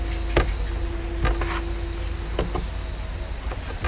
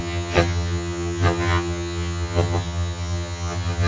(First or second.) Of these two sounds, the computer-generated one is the second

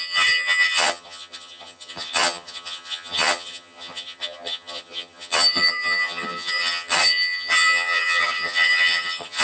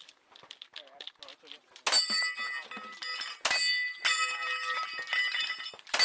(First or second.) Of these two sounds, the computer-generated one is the first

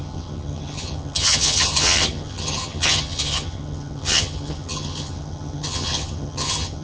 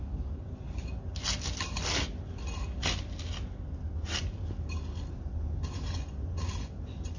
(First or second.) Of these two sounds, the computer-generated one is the first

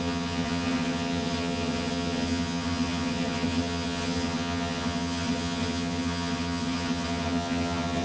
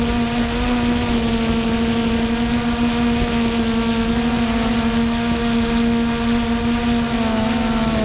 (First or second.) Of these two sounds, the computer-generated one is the first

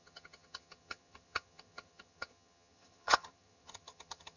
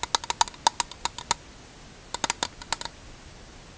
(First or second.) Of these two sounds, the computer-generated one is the first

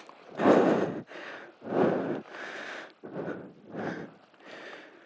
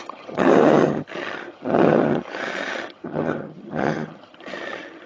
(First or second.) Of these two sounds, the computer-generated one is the second